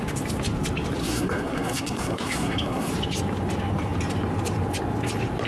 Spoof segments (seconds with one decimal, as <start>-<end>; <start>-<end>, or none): 1.0-2.9